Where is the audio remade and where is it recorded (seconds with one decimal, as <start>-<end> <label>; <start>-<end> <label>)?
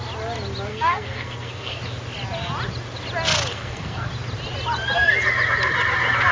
0.0-0.7 recorded; 0.7-1.8 remade; 1.8-3.5 recorded; 3.5-4.1 remade; 4.1-6.3 recorded